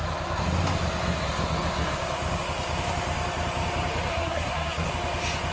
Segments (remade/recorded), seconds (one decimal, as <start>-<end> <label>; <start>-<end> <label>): 0.0-4.1 recorded; 4.1-4.9 remade; 4.9-5.5 recorded